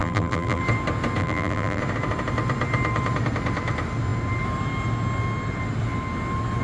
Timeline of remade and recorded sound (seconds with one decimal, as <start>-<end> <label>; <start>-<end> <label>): 0.0-0.6 remade; 0.6-1.2 recorded; 1.2-1.8 remade; 1.8-6.6 recorded